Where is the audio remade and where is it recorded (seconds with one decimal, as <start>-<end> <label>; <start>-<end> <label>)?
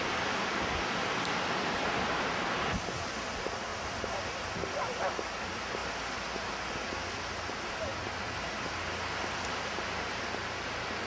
0.0-11.1 recorded